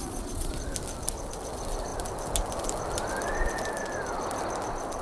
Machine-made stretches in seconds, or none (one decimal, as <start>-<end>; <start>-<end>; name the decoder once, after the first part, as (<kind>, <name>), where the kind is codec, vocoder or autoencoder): 0.0-0.5 (vocoder, Vocos)

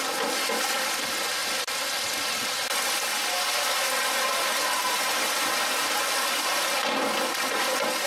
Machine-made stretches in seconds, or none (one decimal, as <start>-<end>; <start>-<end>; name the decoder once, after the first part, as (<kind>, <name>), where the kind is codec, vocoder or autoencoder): none

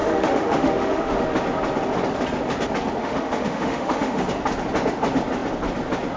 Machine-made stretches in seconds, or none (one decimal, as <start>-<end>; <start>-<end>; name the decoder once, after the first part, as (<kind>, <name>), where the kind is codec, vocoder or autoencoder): 0.0-1.2 (autoencoder, DAC-VAE); 3.0-4.2